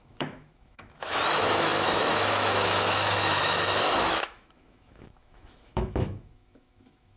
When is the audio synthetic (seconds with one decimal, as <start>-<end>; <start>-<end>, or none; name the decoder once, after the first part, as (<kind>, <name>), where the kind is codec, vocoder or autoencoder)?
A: 0.0-7.2 (autoencoder, DAC-VAE)